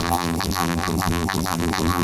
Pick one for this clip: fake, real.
fake